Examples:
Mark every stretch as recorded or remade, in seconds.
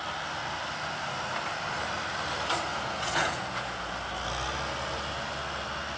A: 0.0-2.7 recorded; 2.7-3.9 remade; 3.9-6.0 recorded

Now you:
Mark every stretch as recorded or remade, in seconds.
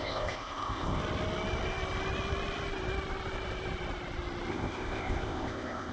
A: 0.0-1.0 remade; 1.0-4.5 recorded; 4.5-5.9 remade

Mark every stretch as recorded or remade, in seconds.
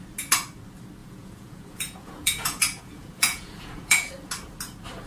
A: 0.0-1.0 recorded; 1.0-4.1 remade; 4.1-5.1 recorded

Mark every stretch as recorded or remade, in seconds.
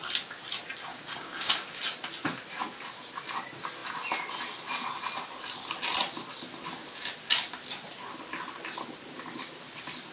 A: 0.0-0.9 recorded; 0.9-1.8 remade; 1.8-10.1 recorded